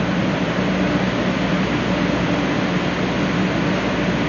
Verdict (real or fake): real